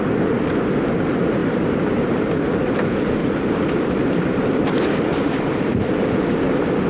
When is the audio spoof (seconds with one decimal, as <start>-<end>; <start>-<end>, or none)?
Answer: 3.2-4.6; 5.1-5.9